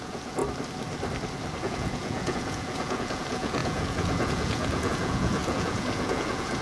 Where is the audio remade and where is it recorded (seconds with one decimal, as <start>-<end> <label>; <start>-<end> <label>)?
0.0-0.4 remade; 0.4-1.6 recorded; 1.6-6.6 remade